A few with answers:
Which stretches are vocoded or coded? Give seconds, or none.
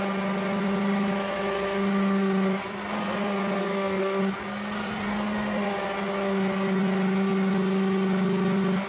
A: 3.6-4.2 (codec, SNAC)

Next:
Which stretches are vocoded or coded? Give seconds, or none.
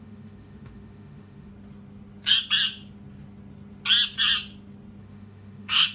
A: 0.0-1.5 (autoencoder, DAC-VAE); 5.0-5.9